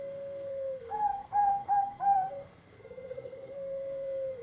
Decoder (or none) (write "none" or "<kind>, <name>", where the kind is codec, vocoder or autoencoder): codec, SNAC